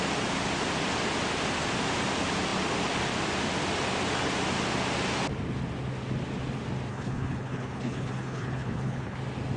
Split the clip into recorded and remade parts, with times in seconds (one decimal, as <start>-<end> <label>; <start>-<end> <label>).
0.0-6.9 recorded; 6.9-9.2 remade; 9.2-9.6 recorded